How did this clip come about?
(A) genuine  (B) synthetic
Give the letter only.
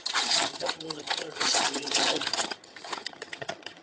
B